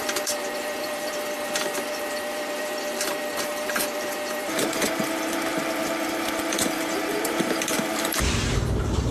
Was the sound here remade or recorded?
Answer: remade